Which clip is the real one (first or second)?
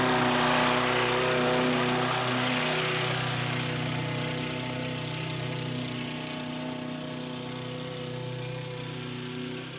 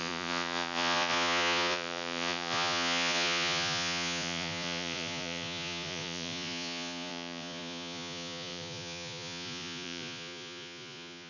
first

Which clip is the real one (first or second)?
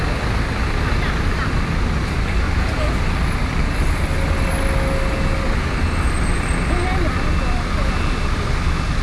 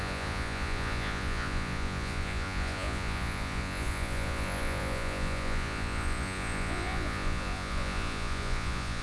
first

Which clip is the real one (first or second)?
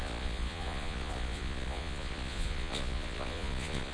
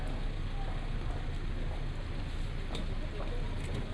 second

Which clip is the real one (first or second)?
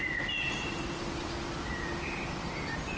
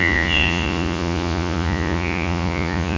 first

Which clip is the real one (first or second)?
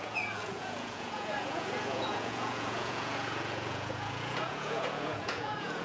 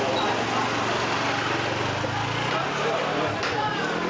second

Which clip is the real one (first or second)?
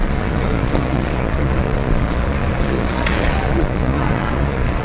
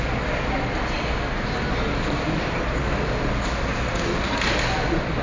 second